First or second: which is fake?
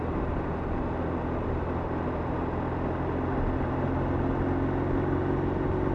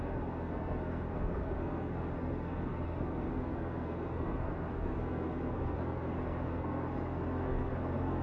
second